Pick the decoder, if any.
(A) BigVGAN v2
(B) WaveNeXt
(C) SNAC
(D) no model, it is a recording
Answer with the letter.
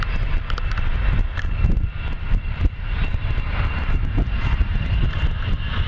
A